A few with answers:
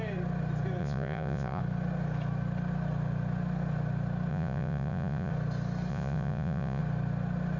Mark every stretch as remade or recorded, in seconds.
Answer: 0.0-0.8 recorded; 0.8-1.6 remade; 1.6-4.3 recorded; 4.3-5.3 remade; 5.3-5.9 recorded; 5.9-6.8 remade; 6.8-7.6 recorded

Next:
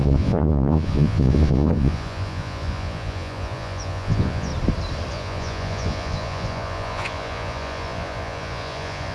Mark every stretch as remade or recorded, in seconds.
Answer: 0.0-4.5 remade; 4.5-5.1 recorded; 5.1-9.1 remade

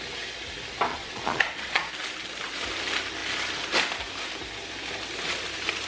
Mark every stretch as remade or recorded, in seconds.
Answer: 0.0-0.9 recorded; 0.9-1.9 remade; 1.9-5.9 recorded

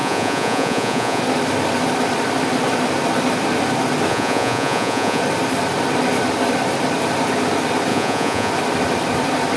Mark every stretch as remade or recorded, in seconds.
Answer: 0.0-1.2 remade; 1.2-4.1 recorded; 4.1-5.2 remade; 5.2-7.9 recorded; 7.9-8.5 remade; 8.5-9.6 recorded

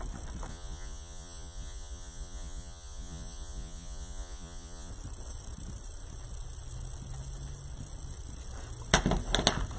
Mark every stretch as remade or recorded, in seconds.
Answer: 0.0-0.5 recorded; 0.5-4.9 remade; 4.9-9.8 recorded

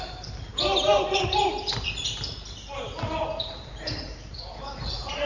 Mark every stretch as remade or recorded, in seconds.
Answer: 0.0-5.3 recorded